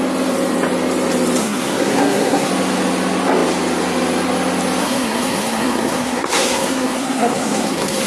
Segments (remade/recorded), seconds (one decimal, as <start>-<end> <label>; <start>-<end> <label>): 0.0-1.4 recorded; 1.4-2.5 remade; 2.5-4.8 recorded; 4.8-8.1 remade